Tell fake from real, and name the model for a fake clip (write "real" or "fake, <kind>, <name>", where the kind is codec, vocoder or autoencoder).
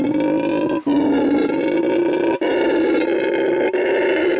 real